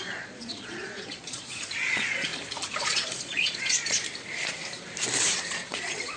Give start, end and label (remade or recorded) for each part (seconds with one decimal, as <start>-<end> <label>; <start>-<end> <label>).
0.0-2.3 remade; 2.3-2.8 recorded; 2.8-4.0 remade; 4.0-5.6 recorded; 5.6-6.2 remade